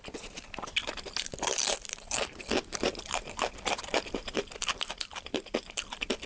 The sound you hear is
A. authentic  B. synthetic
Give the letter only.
B